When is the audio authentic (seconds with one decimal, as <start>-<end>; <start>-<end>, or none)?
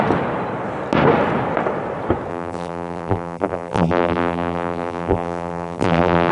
0.0-2.3